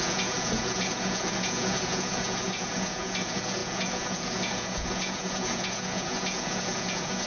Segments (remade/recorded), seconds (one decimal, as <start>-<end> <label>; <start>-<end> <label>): 0.0-7.3 remade